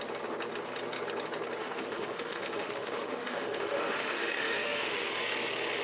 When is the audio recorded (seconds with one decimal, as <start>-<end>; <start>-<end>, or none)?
0.0-1.6; 5.1-5.8